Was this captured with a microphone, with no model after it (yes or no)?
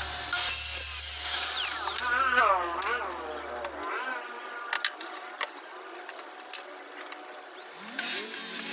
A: yes